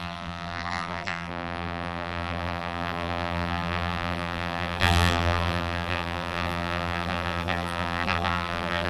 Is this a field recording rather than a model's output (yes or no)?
no